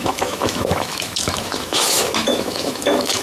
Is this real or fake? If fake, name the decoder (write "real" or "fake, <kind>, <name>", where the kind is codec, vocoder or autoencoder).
fake, autoencoder, DAC-VAE